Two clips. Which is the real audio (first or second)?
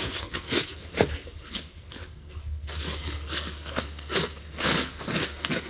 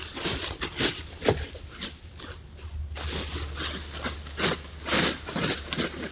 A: second